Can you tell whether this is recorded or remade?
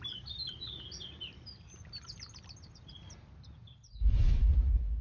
recorded